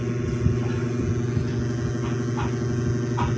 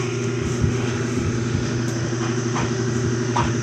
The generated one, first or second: second